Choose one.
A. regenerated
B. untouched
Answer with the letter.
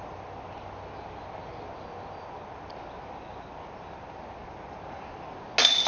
B